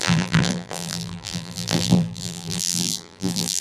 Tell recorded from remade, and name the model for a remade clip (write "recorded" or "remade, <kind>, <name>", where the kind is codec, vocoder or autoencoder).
remade, vocoder, BigVGAN v2